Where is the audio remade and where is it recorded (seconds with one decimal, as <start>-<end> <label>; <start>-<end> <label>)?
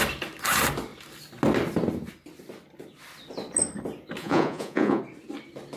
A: 0.0-4.2 recorded; 4.2-5.0 remade; 5.0-5.8 recorded